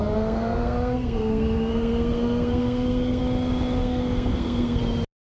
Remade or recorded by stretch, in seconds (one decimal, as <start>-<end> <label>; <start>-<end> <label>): 0.0-3.2 remade; 3.2-3.8 recorded; 3.8-4.8 remade; 4.8-5.3 recorded